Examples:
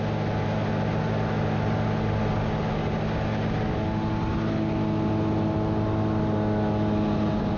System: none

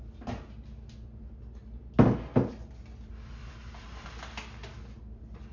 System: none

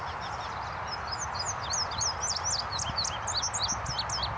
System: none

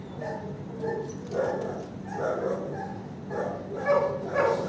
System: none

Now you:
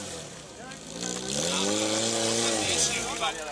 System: none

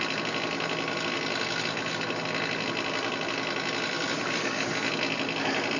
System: none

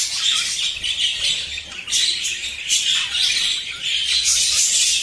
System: none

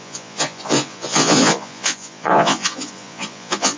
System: vocoder, Vocos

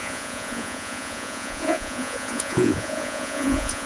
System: vocoder, Vocos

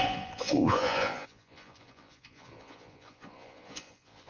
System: vocoder, Vocos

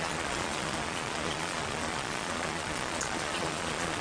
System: vocoder, Vocos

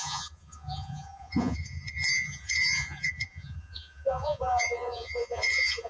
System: vocoder, Vocos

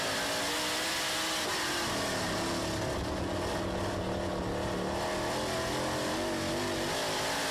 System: none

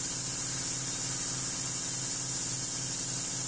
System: none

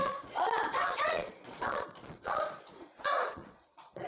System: vocoder, Vocos